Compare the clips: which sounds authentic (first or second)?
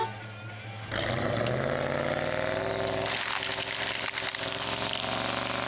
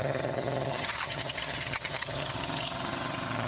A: first